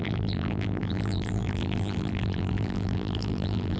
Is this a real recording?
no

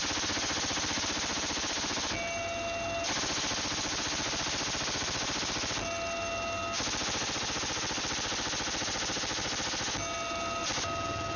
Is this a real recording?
yes